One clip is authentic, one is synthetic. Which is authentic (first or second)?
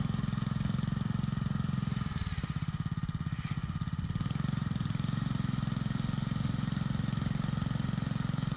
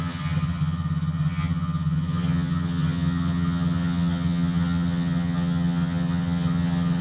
first